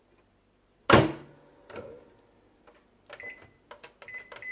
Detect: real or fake real